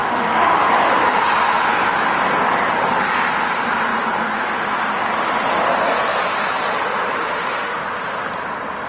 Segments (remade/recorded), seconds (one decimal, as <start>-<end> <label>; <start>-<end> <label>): 0.0-0.7 remade; 0.7-7.2 recorded; 7.2-7.8 remade; 7.8-8.9 recorded